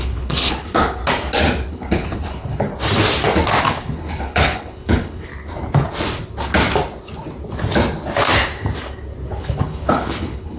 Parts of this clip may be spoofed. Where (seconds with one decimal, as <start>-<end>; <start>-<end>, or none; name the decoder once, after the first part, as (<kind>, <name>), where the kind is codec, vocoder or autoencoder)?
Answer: 0.0-1.0 (codec, HILCodec); 1.7-2.7; 3.6-5.3; 9.4-10.6